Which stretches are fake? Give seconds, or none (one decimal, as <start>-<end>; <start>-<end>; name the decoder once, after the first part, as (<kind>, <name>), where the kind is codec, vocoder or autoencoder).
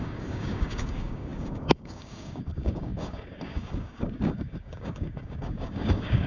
0.0-6.3 (codec, DAC)